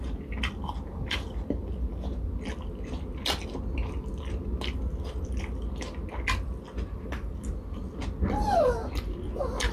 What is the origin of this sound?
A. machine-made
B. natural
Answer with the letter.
B